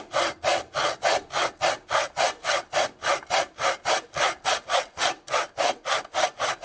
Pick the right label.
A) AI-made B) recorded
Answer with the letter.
B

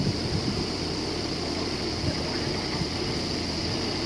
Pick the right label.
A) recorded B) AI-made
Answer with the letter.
A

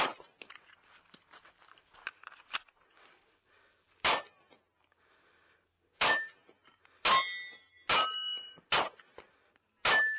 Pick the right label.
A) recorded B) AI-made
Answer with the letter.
A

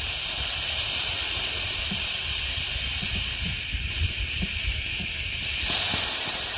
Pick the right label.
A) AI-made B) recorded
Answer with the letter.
B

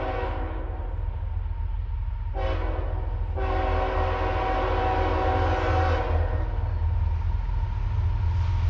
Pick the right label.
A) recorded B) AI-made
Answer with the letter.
A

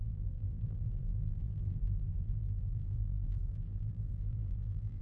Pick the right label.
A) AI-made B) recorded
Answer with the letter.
A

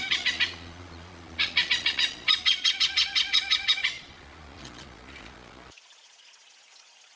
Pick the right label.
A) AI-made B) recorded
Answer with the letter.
A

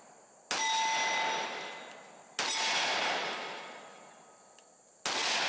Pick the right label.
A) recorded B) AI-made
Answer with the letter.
A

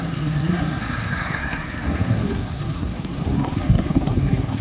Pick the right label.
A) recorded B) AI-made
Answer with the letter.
B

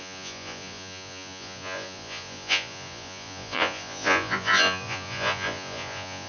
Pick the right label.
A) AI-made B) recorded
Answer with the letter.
A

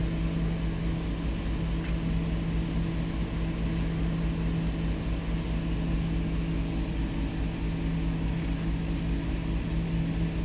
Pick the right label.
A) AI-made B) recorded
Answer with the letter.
B